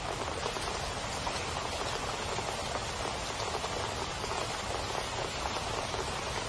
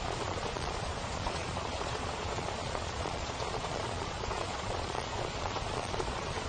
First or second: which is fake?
second